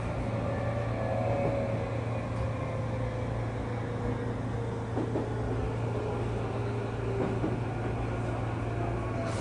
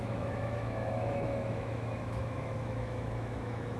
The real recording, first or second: first